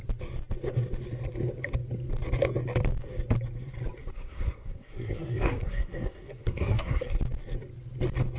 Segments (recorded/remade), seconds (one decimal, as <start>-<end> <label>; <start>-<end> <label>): 0.0-4.0 recorded; 4.0-7.2 remade; 7.2-8.4 recorded